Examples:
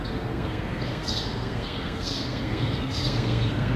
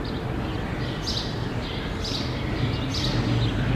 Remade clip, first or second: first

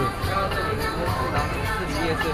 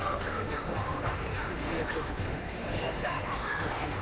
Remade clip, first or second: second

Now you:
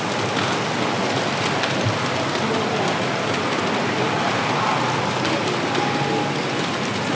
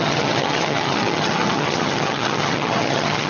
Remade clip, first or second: second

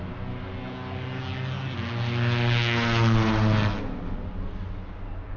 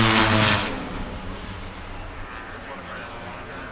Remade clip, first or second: second